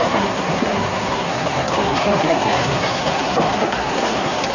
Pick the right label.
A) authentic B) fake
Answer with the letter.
B